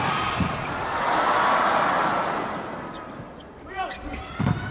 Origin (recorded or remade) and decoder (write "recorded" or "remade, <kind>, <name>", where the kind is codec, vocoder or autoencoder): recorded